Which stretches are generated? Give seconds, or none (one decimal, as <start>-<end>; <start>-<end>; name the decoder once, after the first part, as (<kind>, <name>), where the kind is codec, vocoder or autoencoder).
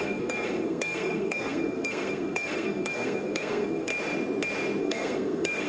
0.0-3.9 (codec, SNAC); 4.8-5.7